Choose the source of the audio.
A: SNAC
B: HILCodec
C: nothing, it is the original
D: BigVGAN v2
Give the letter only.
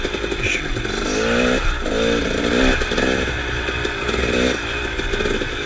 C